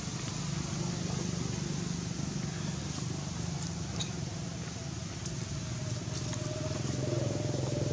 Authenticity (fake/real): real